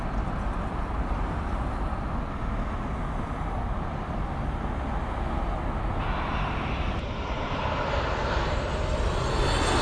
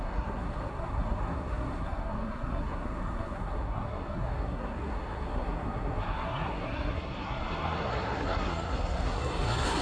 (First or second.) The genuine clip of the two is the first